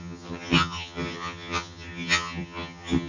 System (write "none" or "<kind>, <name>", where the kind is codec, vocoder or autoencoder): vocoder, HiFi-GAN